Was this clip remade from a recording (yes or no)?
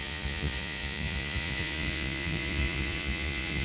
yes